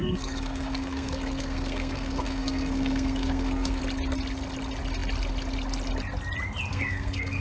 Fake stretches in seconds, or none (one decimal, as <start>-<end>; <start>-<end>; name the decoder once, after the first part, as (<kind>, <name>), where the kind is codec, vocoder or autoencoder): 0.0-3.8 (codec, SNAC); 6.7-7.4